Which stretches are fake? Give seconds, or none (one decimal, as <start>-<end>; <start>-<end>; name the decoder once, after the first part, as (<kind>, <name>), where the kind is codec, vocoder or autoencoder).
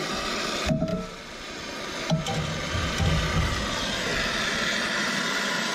none